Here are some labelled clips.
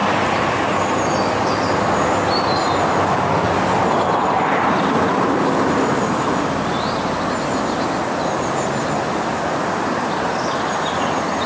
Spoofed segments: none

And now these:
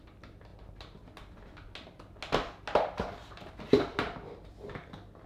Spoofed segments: none

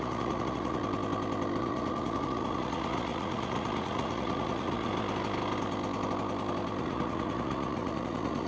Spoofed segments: 0.0-0.8; 1.6-4.9; 6.8-8.5

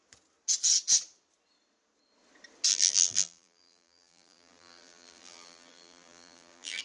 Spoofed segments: 2.7-6.8

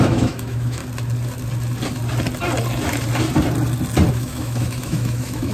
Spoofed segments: 0.0-0.8; 4.1-5.5

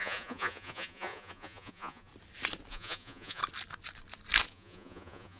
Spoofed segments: 0.0-2.1; 2.7-3.4; 4.5-5.4